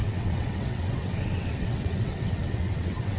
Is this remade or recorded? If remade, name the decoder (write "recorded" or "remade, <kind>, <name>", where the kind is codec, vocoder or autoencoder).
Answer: remade, vocoder, WaveNeXt